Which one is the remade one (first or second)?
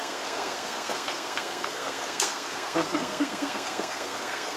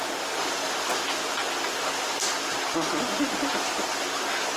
first